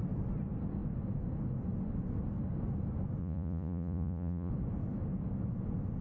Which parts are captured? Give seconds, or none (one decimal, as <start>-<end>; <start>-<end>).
0.0-3.2; 4.5-6.0